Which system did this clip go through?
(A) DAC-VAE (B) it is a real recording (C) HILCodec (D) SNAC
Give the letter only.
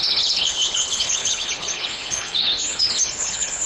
C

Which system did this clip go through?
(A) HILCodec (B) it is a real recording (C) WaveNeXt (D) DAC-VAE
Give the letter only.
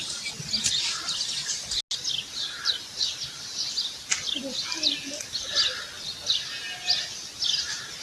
B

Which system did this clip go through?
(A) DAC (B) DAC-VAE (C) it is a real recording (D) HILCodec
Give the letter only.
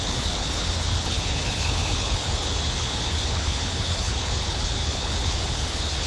D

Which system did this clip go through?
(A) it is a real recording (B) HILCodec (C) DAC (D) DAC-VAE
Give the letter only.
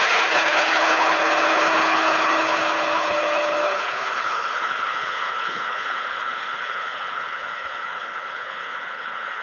B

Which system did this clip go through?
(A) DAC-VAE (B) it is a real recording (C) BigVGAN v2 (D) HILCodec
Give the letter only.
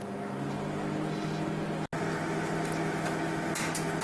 B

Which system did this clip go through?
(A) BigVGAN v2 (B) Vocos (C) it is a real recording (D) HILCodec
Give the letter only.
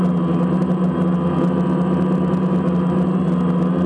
C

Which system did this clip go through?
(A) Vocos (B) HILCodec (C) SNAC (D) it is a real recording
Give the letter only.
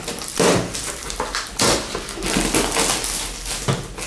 D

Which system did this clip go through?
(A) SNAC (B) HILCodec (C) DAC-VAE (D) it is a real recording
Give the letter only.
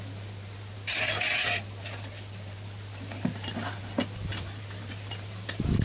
D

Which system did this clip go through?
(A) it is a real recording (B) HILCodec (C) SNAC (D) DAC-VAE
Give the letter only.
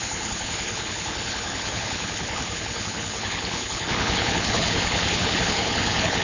B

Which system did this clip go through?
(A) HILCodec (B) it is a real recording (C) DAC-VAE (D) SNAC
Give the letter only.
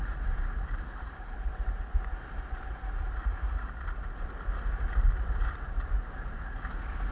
B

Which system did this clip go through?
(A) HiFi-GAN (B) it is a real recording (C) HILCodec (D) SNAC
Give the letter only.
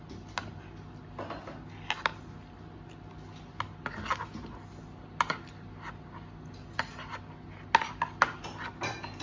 B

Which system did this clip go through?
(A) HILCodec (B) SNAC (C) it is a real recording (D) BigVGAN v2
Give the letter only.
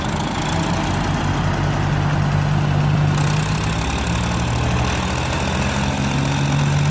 C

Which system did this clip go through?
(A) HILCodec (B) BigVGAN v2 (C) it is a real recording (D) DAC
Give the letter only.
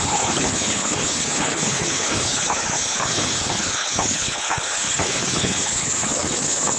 A